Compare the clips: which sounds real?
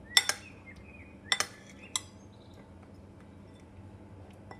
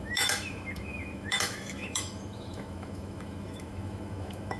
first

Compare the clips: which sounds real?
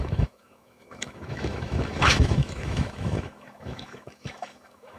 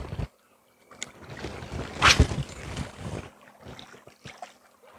second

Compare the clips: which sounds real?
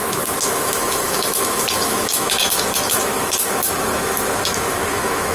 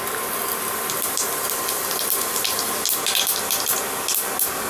second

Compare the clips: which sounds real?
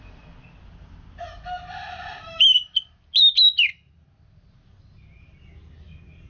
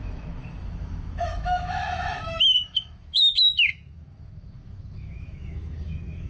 first